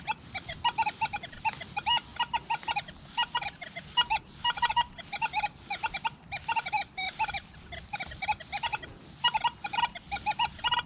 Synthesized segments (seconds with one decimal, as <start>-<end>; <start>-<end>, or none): none